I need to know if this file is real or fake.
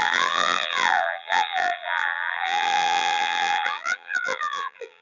fake